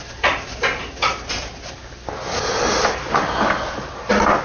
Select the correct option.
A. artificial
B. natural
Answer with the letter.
B